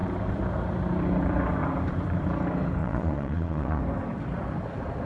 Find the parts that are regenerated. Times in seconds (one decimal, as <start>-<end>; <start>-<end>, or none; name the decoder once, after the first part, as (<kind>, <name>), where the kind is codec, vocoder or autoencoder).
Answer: 2.8-3.8 (vocoder, Vocos)